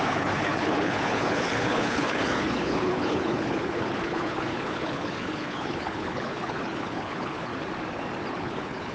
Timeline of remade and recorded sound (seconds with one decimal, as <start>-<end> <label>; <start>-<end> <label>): 0.0-7.5 remade; 7.5-8.3 recorded; 8.3-8.9 remade